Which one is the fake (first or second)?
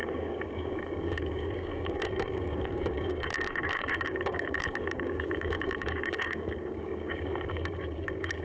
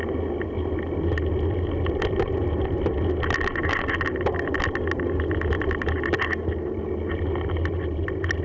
first